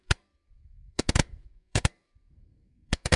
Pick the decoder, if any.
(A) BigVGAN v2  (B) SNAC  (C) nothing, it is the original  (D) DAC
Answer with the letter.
B